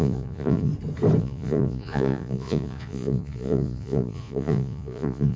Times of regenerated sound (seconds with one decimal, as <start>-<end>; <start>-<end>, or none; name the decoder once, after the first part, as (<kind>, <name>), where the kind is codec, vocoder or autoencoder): 0.0-0.7 (vocoder, Vocos); 1.2-5.4